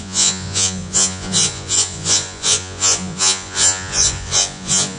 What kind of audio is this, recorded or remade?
remade